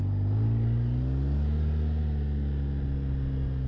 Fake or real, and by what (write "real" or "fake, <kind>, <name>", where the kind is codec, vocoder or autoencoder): real